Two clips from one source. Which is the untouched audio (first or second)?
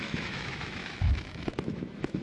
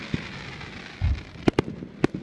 second